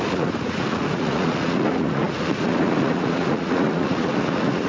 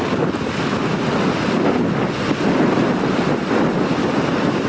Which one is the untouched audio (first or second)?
second